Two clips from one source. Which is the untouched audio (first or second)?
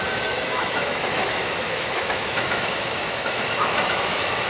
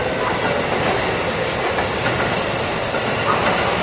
second